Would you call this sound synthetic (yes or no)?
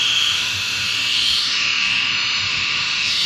yes